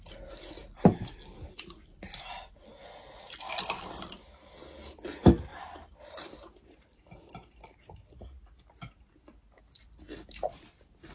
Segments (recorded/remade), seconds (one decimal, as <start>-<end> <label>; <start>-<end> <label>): 0.0-0.6 recorded; 0.6-1.1 remade; 1.1-5.5 recorded; 5.5-7.0 remade; 7.0-11.1 recorded